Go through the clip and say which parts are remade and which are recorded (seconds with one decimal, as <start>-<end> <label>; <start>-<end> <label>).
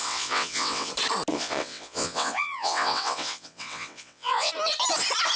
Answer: 0.0-0.9 remade; 0.9-1.3 recorded; 1.3-4.5 remade; 4.5-5.4 recorded